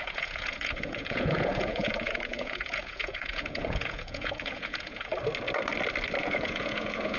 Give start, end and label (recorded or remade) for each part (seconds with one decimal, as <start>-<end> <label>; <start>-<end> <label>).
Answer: 0.0-5.1 remade; 5.1-6.2 recorded; 6.2-7.2 remade